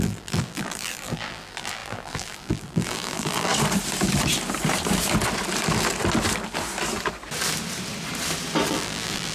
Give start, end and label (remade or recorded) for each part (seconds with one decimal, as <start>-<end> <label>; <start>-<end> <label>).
0.0-3.5 remade; 3.5-8.7 recorded; 8.7-9.3 remade